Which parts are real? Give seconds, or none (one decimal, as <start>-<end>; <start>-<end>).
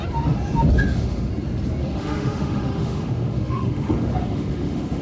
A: 0.0-0.7; 1.3-1.8